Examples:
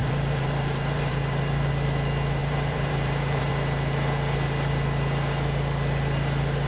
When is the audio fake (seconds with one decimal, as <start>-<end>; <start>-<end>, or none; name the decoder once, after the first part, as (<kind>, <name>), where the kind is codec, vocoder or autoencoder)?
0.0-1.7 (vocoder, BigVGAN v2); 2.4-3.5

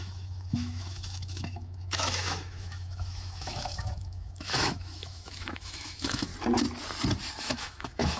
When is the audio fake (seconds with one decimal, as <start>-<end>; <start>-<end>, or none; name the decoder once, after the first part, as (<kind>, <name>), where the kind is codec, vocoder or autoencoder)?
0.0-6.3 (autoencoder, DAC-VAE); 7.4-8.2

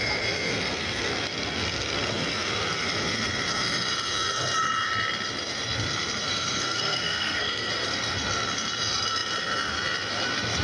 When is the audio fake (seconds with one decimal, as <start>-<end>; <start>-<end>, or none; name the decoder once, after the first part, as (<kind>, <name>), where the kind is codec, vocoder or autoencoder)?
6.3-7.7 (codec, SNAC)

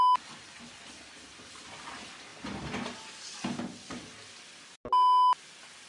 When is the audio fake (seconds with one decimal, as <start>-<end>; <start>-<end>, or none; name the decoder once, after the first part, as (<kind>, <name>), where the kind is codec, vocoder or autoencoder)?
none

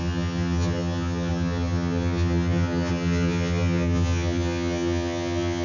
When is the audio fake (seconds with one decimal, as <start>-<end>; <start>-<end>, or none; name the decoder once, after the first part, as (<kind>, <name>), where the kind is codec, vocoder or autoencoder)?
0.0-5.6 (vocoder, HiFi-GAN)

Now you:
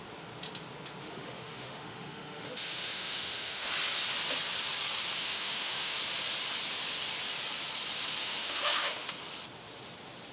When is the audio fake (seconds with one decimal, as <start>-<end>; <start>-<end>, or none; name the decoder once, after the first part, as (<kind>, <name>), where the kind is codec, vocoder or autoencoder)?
1.0-3.7 (autoencoder, DAC-VAE); 5.2-6.0; 8.2-9.1